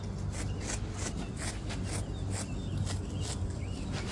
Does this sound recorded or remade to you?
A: recorded